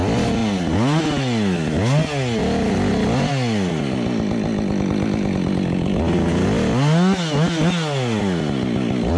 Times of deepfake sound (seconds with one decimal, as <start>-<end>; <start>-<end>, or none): none

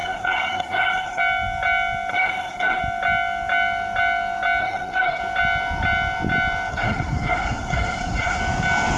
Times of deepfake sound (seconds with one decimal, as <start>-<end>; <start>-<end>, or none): 0.0-1.2; 2.1-2.8; 4.6-5.2; 6.7-8.4

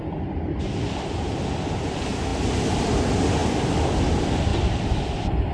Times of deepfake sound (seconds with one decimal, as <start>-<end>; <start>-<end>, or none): none

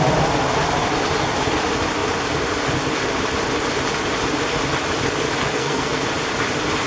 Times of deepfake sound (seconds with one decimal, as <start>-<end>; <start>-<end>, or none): 5.4-6.0

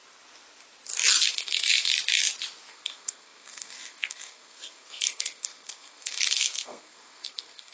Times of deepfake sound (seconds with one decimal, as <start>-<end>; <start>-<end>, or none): 1.3-1.9; 2.7-7.7

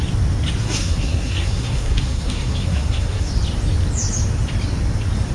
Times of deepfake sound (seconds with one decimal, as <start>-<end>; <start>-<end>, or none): 0.6-3.3

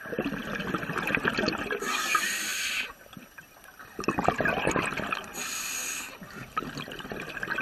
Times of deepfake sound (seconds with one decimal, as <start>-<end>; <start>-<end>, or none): none

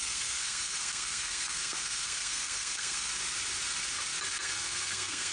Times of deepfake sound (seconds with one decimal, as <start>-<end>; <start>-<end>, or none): 0.0-3.1; 4.3-5.3